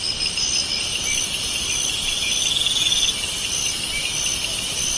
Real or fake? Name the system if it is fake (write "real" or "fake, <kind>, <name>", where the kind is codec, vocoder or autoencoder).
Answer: real